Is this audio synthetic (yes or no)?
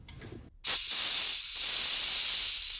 no